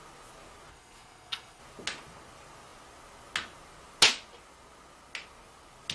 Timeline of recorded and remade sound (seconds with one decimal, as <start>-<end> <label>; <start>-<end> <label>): 0.0-0.7 recorded; 0.7-1.6 remade; 1.6-5.9 recorded